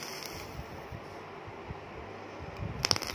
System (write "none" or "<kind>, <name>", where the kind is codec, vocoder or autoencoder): none